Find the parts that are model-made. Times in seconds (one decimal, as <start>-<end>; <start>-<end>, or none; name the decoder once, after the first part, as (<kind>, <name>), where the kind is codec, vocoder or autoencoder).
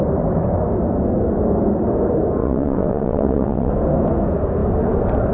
2.4-3.7 (vocoder, WaveNeXt)